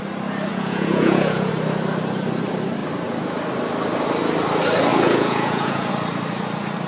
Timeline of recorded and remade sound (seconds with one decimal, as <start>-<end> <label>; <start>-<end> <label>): 0.0-0.5 recorded; 0.5-1.5 remade; 1.5-4.9 recorded; 4.9-5.9 remade; 5.9-6.9 recorded